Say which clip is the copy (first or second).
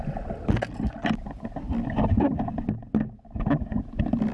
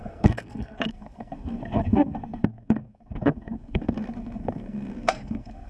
second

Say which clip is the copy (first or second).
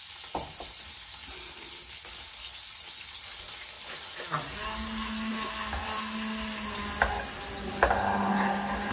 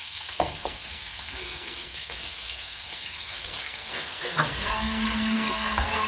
second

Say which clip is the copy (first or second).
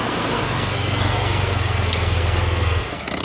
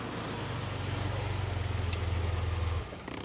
first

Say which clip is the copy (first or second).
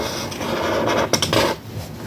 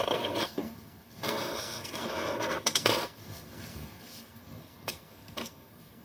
second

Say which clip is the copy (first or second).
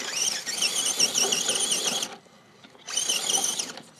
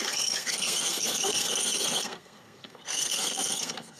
second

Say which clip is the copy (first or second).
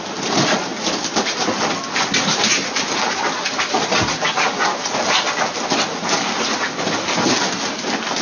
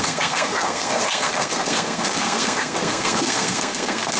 second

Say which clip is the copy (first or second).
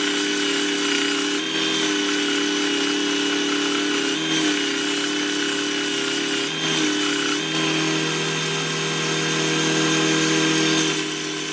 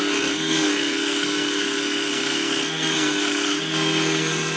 second